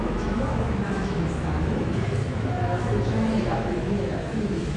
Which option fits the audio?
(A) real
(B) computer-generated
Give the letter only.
B